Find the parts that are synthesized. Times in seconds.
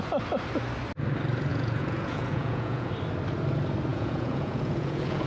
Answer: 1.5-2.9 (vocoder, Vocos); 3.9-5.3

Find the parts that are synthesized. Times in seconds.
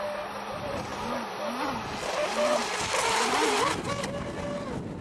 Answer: none